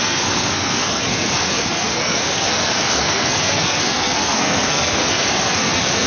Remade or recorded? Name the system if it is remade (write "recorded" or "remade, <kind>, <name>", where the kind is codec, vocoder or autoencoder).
remade, codec, SNAC